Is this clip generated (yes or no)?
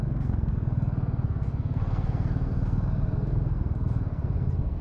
yes